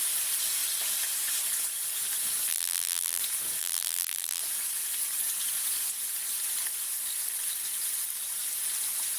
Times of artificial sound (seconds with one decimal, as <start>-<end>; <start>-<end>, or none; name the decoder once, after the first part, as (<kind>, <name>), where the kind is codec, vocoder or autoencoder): 2.5-3.2 (vocoder, BigVGAN v2); 3.6-4.4